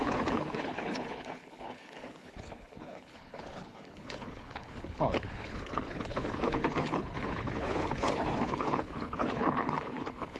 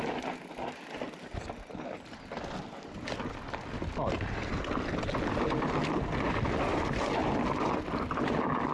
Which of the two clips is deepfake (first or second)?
first